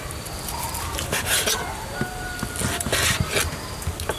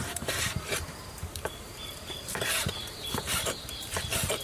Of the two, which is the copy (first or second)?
second